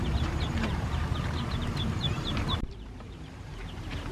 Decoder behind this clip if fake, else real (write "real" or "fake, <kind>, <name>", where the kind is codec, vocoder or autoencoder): fake, vocoder, BigVGAN v2